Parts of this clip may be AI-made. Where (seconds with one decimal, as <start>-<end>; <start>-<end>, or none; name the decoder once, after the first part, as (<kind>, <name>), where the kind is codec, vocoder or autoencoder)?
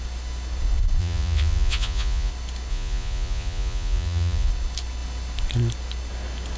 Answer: 1.0-2.3 (vocoder, Vocos); 2.7-4.5